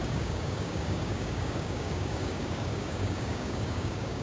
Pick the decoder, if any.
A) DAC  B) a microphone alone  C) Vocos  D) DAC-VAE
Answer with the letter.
A